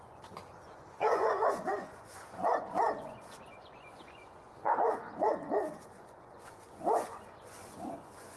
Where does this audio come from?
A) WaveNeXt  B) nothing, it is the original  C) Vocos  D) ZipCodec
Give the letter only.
C